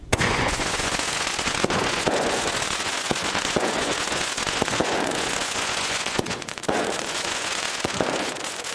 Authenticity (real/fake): fake